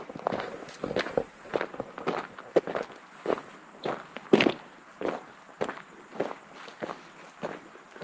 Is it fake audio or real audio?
fake